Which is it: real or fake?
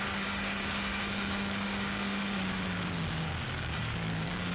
fake